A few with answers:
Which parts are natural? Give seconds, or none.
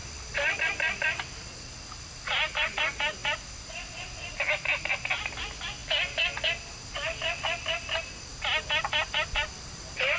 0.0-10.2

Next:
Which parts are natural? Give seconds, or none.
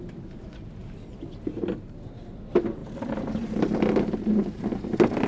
0.0-0.8; 1.4-2.8; 4.6-5.3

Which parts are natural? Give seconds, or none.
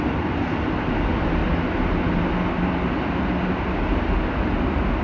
0.0-5.0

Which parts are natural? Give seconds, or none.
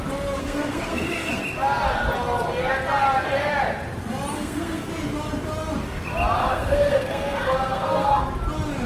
0.0-0.4; 1.4-4.3; 4.9-6.4; 8.2-8.9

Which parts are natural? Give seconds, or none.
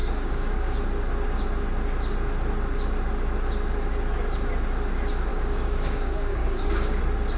0.8-5.3; 7.0-7.4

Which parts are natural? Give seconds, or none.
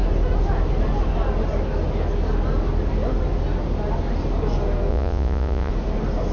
0.0-4.9; 5.7-6.3